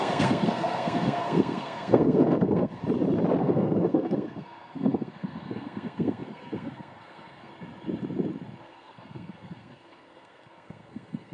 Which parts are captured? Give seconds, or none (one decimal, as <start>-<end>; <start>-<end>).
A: 2.8-3.4; 7.5-8.6